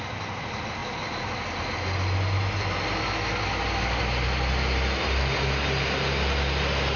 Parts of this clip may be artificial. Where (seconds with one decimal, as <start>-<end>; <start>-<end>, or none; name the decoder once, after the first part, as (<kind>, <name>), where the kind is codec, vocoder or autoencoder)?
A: none